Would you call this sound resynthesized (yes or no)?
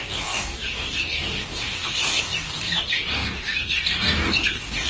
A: yes